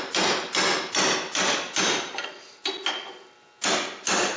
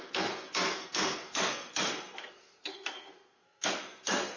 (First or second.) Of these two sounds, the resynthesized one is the second